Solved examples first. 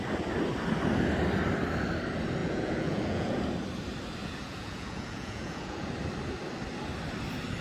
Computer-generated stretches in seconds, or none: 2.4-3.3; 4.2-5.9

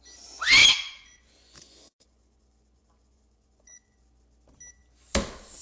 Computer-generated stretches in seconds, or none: 0.6-4.0